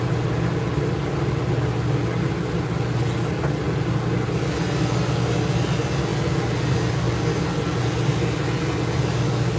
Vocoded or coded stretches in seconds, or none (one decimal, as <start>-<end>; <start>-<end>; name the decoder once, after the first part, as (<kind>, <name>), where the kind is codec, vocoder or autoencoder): none